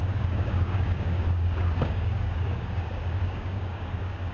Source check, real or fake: fake